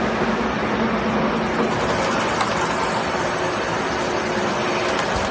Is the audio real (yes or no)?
yes